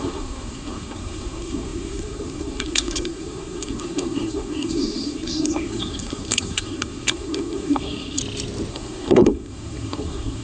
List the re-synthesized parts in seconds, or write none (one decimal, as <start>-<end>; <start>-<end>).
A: 0.0-8.2; 8.7-10.4